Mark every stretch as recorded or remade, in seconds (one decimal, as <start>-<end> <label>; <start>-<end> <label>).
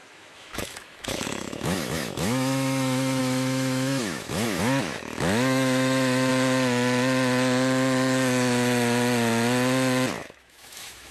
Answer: 0.0-6.3 remade; 6.3-10.2 recorded; 10.2-11.1 remade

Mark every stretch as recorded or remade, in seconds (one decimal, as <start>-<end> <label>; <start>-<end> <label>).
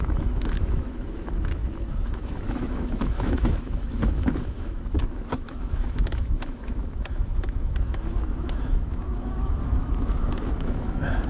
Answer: 0.0-11.3 remade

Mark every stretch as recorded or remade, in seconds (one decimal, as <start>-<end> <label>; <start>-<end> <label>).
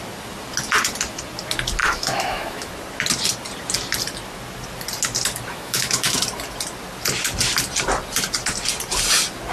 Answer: 0.0-1.8 recorded; 1.8-2.7 remade; 2.7-5.5 recorded; 5.5-6.2 remade; 6.2-9.5 recorded